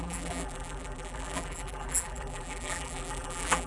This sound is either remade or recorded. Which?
remade